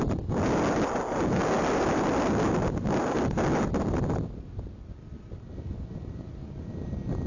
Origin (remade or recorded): recorded